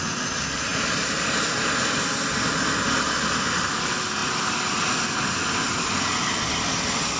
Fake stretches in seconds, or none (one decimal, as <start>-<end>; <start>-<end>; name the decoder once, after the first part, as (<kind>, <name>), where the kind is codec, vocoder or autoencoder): none